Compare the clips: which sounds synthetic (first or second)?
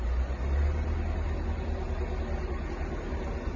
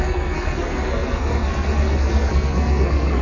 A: second